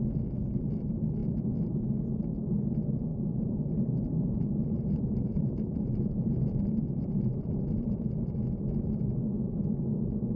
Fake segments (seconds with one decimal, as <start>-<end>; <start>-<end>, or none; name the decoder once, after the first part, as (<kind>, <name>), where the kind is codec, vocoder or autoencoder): 3.1-8.0 (vocoder, BigVGAN v2)